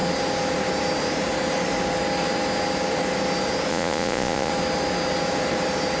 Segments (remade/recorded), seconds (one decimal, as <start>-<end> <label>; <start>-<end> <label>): 0.0-3.7 recorded; 3.7-4.5 remade; 4.5-6.0 recorded